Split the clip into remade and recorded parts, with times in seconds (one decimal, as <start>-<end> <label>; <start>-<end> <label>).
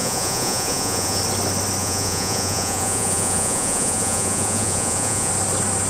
0.0-1.2 remade; 1.2-1.8 recorded; 1.8-5.3 remade; 5.3-5.9 recorded